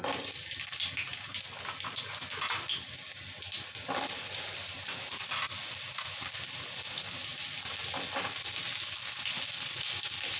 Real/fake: real